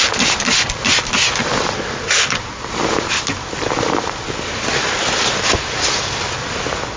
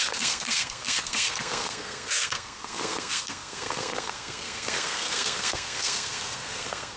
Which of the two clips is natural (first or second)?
first